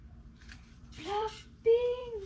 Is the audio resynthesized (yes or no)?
yes